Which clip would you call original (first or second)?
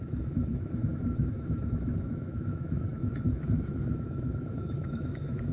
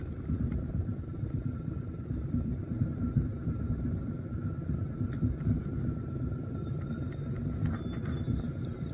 second